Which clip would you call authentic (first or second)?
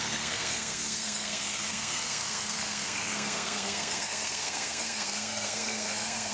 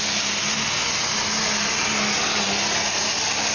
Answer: second